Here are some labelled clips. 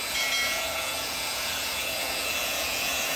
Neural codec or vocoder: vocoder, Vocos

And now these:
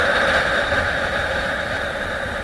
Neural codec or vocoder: vocoder, BigVGAN v2